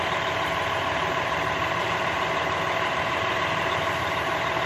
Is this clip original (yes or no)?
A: no